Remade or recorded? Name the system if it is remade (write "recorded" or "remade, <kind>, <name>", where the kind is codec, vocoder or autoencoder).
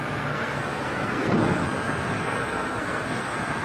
remade, codec, SNAC